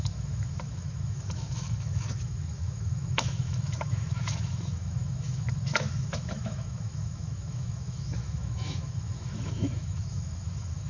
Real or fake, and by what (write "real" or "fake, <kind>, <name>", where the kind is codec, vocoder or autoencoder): fake, autoencoder, DAC-VAE